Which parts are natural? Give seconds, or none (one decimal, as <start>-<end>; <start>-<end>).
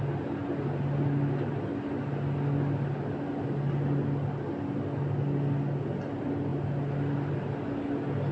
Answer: 0.0-8.3